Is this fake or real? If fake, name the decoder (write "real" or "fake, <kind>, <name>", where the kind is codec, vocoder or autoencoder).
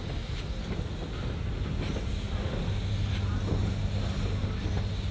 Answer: real